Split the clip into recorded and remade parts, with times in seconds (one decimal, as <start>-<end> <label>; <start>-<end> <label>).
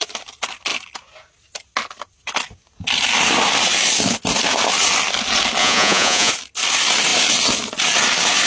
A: 0.0-5.6 recorded; 5.6-6.3 remade; 6.3-8.5 recorded